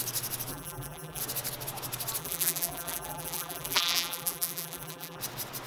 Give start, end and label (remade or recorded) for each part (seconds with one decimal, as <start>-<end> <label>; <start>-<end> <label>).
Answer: 0.0-0.5 recorded; 0.5-1.2 remade; 1.2-2.2 recorded; 2.2-5.2 remade; 5.2-5.7 recorded